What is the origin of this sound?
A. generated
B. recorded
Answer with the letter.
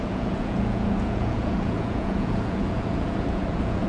A